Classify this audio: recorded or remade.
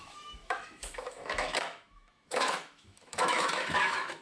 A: remade